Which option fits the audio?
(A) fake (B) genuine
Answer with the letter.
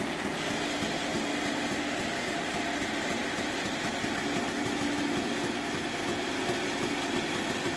B